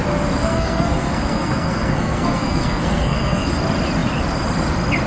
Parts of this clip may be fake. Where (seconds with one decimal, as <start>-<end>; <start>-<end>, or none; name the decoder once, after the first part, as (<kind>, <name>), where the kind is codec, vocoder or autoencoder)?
0.4-3.5 (codec, SNAC)